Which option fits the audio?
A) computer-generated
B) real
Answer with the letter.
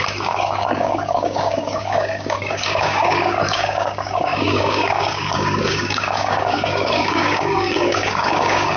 A